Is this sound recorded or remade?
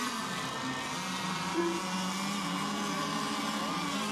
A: recorded